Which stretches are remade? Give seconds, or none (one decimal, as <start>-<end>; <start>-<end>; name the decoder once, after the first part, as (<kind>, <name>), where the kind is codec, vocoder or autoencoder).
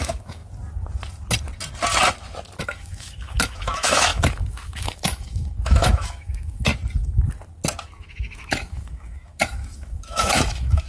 0.0-0.4 (autoencoder, DAC-VAE); 2.6-6.7; 8.0-10.9